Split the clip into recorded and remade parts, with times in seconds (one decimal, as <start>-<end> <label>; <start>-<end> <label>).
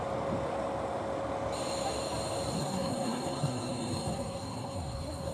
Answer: 0.0-2.6 recorded; 2.6-5.3 remade